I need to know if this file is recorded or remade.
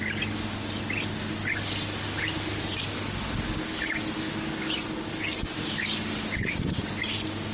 recorded